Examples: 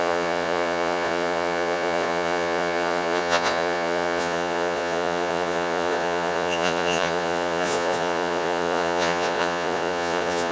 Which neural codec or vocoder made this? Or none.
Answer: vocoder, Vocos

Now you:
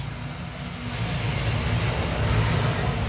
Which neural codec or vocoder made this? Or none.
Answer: none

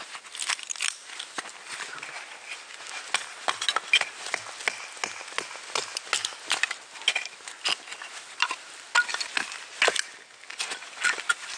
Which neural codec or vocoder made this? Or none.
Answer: none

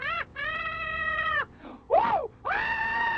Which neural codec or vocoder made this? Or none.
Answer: vocoder, Vocos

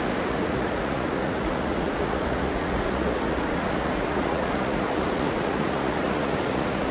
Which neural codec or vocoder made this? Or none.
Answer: vocoder, Vocos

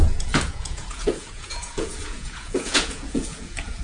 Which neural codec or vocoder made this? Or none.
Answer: vocoder, Vocos